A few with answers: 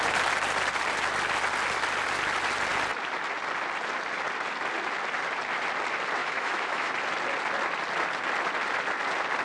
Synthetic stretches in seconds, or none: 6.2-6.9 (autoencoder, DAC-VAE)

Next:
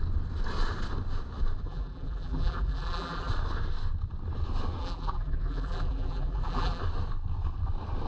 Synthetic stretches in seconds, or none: 1.6-3.3 (vocoder, BigVGAN v2); 4.8-6.8